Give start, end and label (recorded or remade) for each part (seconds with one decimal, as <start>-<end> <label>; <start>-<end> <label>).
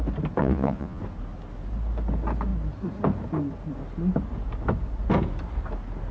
0.0-0.4 recorded; 0.4-1.0 remade; 1.0-6.1 recorded